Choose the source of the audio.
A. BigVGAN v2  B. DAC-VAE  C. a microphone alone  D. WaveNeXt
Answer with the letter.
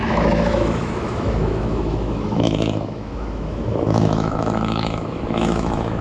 B